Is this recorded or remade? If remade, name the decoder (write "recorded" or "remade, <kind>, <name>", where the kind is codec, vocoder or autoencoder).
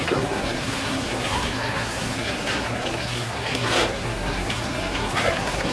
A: remade, codec, SNAC